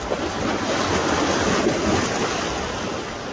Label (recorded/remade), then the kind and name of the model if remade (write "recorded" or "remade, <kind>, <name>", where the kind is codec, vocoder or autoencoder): recorded